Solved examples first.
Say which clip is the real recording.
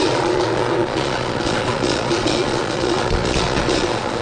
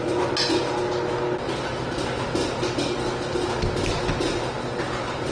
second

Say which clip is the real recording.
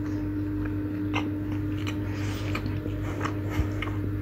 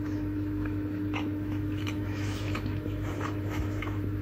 first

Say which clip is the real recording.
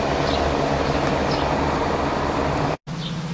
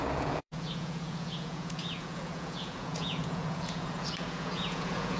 first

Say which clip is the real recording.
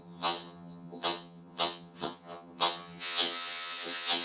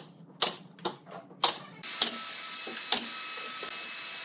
second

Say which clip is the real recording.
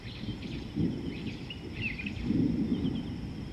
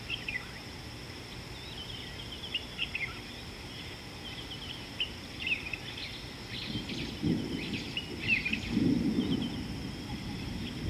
second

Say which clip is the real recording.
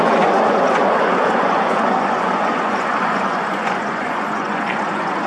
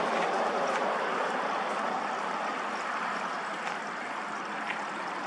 second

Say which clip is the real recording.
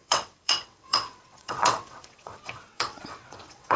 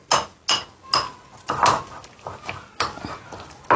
second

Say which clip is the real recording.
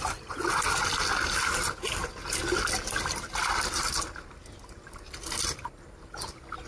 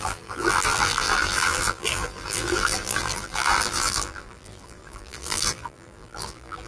first